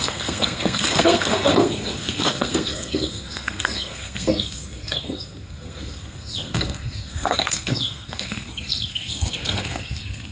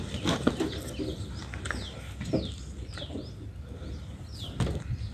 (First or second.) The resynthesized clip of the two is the first